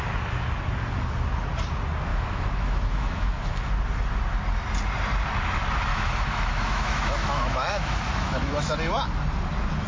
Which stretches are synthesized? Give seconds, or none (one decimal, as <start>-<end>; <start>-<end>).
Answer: 2.1-3.7; 5.9-8.7